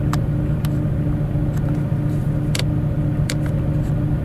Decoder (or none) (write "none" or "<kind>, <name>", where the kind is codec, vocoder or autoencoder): none